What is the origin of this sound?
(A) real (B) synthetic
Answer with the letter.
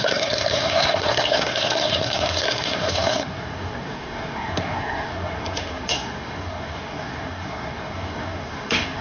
B